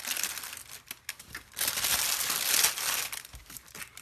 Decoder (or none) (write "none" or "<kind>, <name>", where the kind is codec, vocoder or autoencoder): none